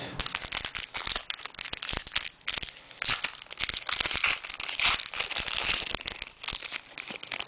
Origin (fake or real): real